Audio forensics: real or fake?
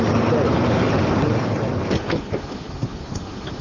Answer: real